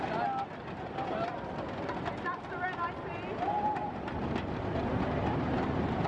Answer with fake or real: real